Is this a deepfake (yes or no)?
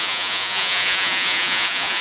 yes